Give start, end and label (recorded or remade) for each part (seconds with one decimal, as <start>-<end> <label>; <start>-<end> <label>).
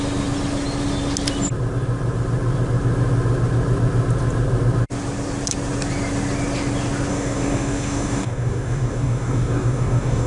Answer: 0.0-7.1 recorded; 7.1-10.3 remade